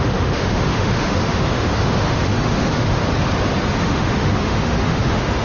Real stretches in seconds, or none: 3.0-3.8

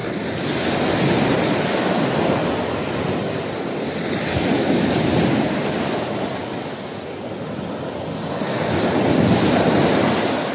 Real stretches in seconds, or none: 0.0-10.5